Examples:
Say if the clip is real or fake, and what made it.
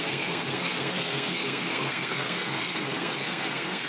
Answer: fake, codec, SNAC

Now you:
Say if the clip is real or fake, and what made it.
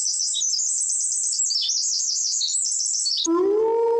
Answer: real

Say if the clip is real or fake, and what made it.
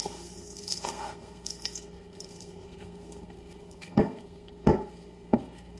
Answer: fake, codec, SNAC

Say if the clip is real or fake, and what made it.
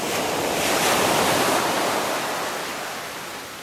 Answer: real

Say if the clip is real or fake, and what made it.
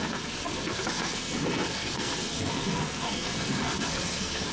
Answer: fake, codec, SNAC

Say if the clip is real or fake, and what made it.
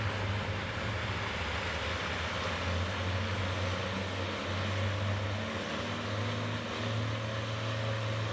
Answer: real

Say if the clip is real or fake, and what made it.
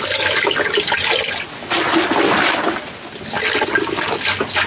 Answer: real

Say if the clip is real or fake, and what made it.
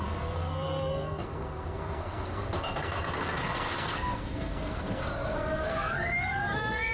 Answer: fake, codec, SNAC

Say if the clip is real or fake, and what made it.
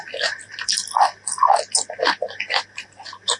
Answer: real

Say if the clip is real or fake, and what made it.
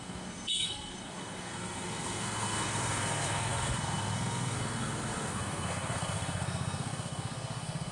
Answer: fake, codec, SNAC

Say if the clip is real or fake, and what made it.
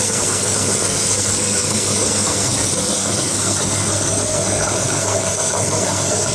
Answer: fake, codec, SNAC